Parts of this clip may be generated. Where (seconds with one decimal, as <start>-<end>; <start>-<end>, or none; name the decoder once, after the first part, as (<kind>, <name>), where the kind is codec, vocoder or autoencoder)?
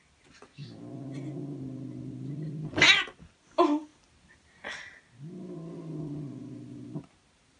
none